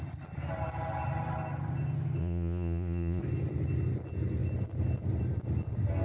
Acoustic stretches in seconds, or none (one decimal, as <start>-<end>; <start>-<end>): 0.0-2.2; 3.2-6.0